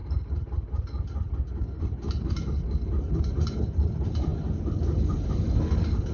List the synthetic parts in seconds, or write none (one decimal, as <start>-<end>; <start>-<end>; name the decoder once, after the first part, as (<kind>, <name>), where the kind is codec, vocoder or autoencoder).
none